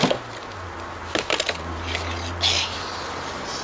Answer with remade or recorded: recorded